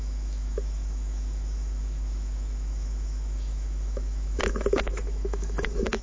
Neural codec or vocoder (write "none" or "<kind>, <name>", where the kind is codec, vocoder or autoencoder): autoencoder, DAC-VAE